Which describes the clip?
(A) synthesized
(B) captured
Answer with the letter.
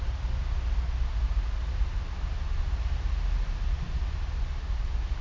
B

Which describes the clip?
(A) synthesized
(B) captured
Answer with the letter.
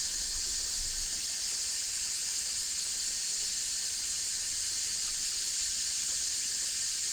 B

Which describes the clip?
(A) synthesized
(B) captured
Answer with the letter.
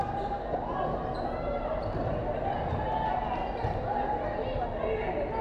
B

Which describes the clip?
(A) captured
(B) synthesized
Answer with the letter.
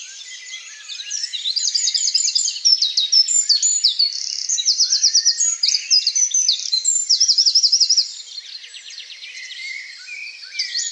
B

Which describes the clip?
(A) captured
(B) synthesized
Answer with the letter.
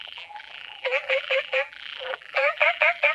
B